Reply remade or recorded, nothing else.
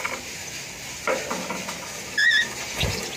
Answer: recorded